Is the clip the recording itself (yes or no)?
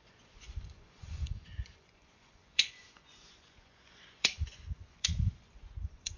no